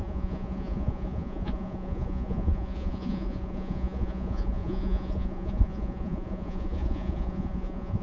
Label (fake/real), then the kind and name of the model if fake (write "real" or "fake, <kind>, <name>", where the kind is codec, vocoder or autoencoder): fake, vocoder, Vocos